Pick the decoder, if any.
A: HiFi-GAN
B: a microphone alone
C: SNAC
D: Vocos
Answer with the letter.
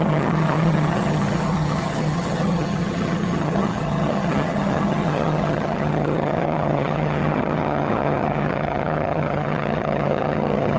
A